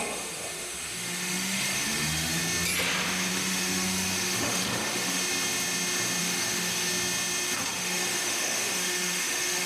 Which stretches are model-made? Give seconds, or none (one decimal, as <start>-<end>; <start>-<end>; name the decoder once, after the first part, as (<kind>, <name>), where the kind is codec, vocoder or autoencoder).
0.0-2.4 (autoencoder, DAC-VAE); 3.3-5.2; 6.2-6.9; 7.6-9.7